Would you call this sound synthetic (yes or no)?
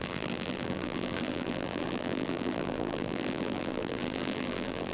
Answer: yes